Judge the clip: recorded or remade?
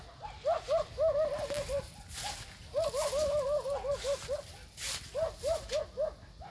recorded